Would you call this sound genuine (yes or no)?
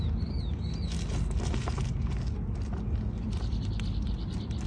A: yes